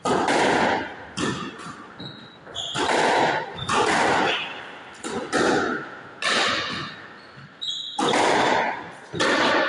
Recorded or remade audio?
recorded